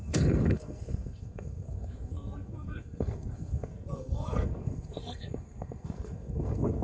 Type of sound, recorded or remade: remade